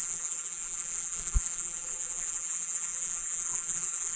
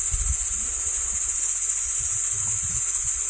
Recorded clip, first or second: second